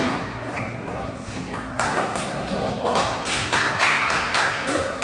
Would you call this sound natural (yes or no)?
no